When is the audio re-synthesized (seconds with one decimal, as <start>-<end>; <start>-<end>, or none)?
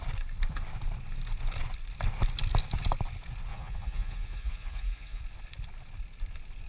3.5-5.2